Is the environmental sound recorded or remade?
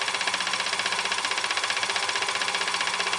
recorded